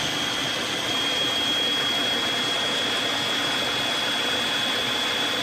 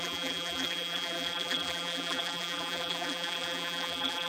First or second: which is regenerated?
second